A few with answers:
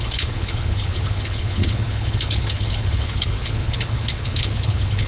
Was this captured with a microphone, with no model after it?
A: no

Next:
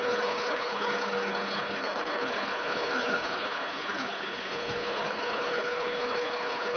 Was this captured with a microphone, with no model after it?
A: no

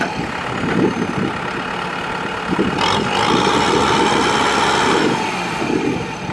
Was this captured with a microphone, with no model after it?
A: yes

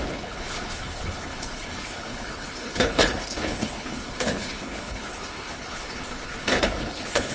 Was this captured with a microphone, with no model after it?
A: no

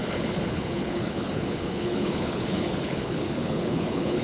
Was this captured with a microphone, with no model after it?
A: no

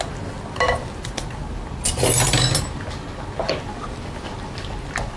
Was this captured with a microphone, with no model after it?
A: yes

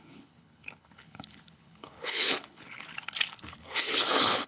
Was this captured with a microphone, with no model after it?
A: no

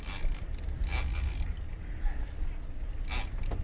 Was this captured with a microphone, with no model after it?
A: yes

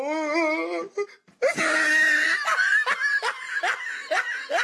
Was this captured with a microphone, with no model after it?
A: yes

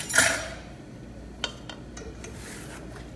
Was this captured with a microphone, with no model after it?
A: yes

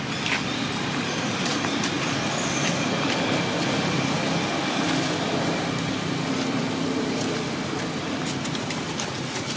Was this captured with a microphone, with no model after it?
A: yes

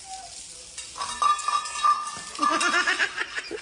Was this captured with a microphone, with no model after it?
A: yes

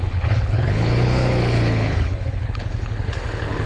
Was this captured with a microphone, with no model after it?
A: no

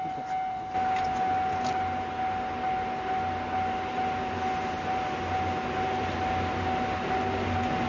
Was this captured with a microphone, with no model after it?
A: yes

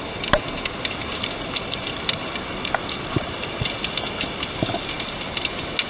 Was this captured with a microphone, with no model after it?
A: yes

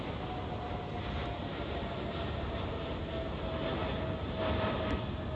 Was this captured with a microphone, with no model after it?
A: yes